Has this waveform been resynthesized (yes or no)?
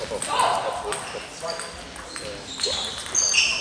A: no